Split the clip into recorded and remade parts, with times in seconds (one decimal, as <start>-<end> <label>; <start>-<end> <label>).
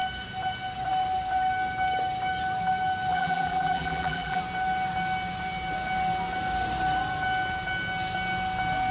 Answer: 0.0-3.1 recorded; 3.1-4.4 remade; 4.4-8.9 recorded